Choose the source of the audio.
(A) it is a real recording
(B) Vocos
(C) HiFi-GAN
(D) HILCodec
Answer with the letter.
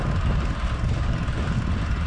A